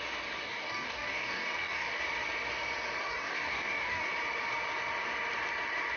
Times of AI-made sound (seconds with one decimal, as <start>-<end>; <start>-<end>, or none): 0.4-2.0; 3.0-4.1